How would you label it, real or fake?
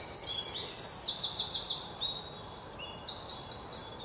real